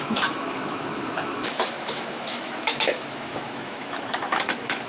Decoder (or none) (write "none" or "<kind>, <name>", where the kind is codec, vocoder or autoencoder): autoencoder, DAC-VAE